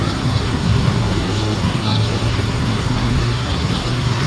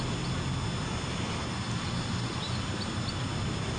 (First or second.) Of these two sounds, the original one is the second